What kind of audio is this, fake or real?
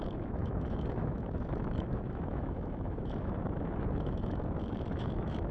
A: fake